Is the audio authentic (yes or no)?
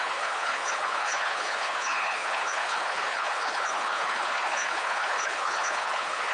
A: no